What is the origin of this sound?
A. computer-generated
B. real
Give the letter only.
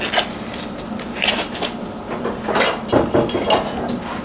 B